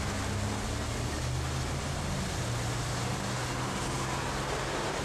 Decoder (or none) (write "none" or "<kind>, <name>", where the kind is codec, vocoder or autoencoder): none